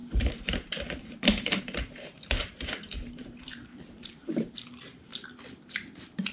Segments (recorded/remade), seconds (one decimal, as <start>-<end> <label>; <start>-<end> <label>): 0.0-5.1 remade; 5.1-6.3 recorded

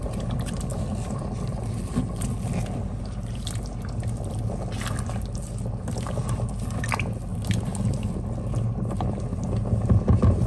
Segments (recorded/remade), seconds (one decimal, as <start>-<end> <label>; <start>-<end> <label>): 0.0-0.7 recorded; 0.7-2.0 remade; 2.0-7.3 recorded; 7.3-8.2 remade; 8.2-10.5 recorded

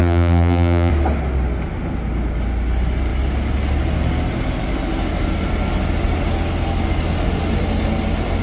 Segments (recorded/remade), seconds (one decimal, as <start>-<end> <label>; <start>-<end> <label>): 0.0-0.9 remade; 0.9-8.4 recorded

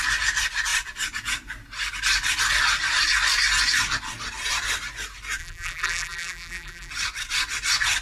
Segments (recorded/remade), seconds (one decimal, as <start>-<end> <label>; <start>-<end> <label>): 0.0-5.4 recorded; 5.4-6.9 remade; 6.9-8.0 recorded

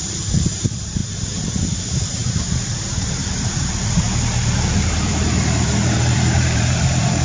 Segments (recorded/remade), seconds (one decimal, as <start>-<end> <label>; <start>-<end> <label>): 0.0-7.2 remade